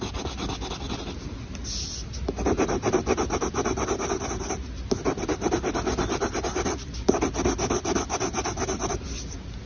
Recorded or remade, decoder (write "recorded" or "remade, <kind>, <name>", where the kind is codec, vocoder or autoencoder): recorded